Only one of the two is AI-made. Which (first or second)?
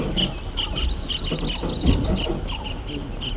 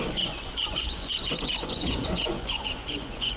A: second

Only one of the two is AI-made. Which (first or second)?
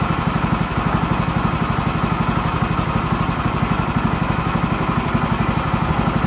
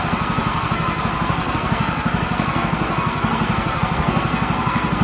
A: second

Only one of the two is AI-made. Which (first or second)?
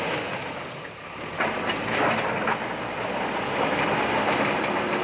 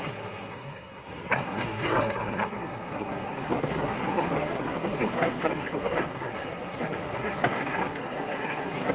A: second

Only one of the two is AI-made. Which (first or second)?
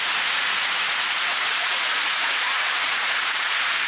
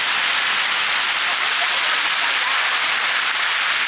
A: first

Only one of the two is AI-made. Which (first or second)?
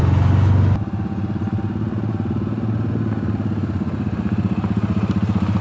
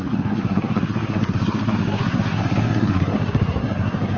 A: second